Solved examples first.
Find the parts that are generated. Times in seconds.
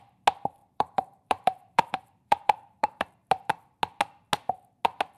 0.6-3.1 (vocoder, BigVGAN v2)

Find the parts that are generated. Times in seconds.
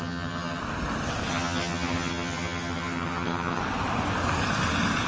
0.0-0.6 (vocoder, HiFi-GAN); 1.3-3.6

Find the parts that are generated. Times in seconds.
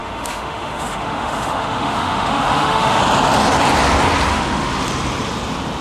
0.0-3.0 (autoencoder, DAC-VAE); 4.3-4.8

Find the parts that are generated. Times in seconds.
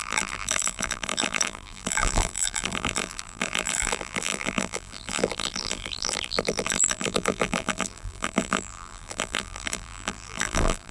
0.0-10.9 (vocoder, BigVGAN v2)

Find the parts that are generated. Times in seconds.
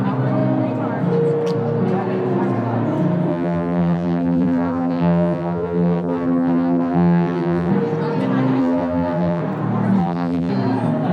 3.3-7.7 (vocoder, BigVGAN v2); 8.6-9.4; 10.0-10.5